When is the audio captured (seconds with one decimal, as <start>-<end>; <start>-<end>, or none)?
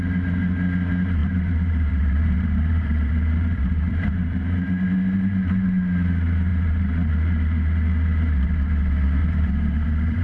0.0-1.2; 4.7-6.5; 7.1-9.2